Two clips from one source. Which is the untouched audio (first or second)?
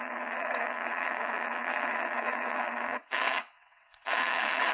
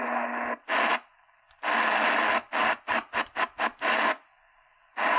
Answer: second